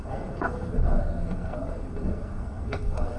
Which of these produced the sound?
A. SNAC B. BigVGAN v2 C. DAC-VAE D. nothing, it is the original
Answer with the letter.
A